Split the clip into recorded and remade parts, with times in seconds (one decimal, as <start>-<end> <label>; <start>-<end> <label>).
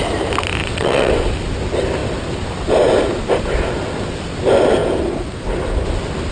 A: 0.0-0.6 recorded; 0.6-1.1 remade; 1.1-6.3 recorded